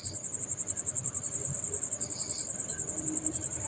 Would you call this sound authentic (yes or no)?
yes